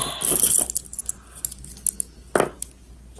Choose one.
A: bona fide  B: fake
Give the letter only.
A